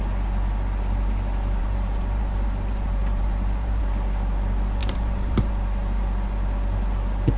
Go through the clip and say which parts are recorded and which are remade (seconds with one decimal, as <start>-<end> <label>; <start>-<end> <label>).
0.0-1.6 recorded; 1.6-3.8 remade; 3.8-4.8 recorded; 4.8-5.5 remade; 5.5-7.4 recorded